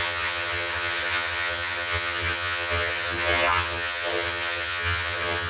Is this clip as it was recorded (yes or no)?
no